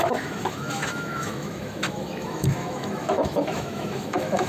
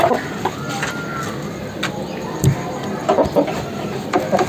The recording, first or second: second